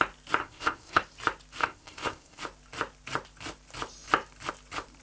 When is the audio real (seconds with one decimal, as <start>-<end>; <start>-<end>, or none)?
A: 0.0-0.4; 1.0-1.6; 2.4-5.0